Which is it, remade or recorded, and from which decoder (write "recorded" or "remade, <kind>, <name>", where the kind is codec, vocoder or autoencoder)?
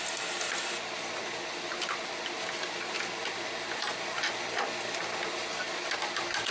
recorded